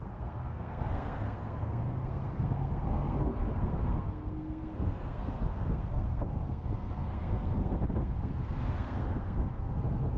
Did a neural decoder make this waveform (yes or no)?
yes